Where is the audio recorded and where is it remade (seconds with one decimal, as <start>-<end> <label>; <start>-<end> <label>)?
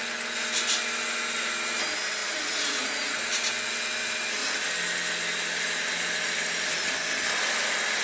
0.0-2.2 recorded; 2.2-3.0 remade; 3.0-8.0 recorded